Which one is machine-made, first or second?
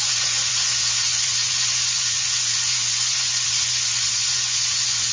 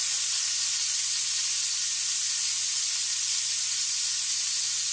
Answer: first